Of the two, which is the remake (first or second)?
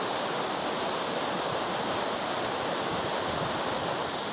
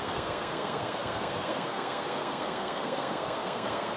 second